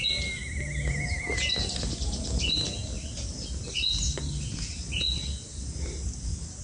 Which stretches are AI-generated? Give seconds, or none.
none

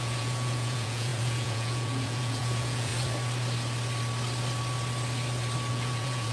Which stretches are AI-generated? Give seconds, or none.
0.0-2.9 (vocoder, Vocos); 5.7-6.3